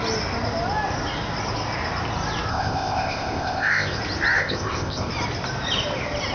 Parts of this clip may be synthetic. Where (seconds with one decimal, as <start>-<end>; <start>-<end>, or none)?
2.5-4.0; 4.4-5.1